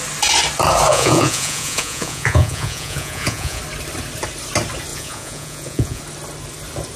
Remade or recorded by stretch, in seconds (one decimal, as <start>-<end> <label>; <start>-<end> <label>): 0.0-0.9 recorded; 0.9-3.6 remade; 3.6-4.9 recorded; 4.9-6.0 remade; 6.0-7.0 recorded